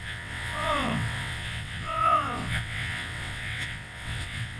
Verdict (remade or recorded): remade